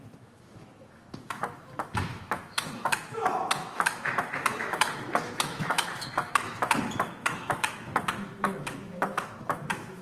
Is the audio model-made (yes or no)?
yes